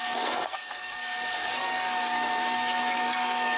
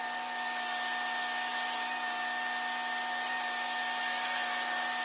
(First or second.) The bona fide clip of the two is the second